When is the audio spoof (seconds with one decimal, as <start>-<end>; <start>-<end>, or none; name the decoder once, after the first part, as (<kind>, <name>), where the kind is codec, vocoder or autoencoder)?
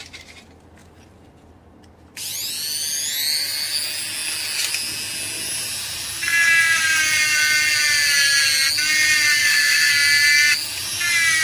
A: 9.4-9.9 (autoencoder, DAC-VAE)